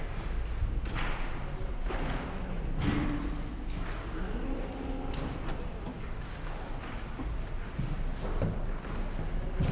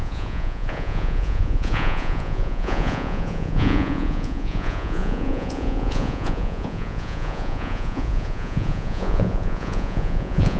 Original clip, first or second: first